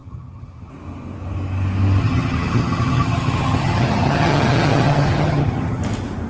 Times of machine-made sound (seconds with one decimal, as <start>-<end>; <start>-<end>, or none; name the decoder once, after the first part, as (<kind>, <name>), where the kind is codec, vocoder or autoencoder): 0.0-0.7 (vocoder, HiFi-GAN); 2.0-5.8